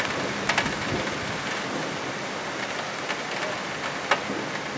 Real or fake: real